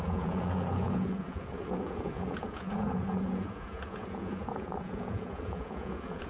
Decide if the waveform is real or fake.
fake